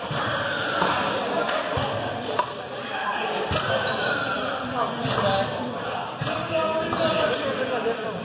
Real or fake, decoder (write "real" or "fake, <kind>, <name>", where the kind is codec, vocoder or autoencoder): real